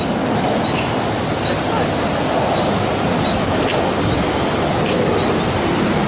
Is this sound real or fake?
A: real